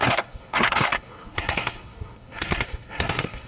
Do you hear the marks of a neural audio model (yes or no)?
yes